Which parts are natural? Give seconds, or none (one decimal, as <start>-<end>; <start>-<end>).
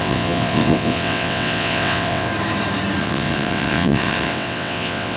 2.3-3.0